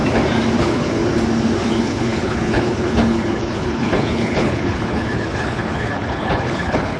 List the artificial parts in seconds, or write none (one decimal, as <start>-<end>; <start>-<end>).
0.6-1.0; 1.7-7.0